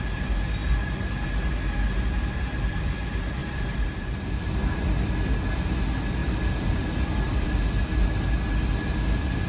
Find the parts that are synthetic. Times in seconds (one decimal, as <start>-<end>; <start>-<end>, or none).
3.4-4.4; 6.2-7.6